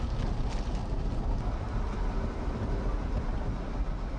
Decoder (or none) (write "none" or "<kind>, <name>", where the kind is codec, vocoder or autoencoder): none